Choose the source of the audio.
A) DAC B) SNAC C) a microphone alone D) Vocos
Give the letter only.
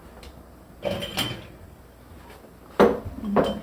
C